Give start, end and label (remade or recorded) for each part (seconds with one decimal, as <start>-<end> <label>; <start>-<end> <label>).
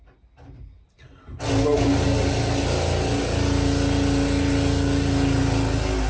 0.0-6.1 recorded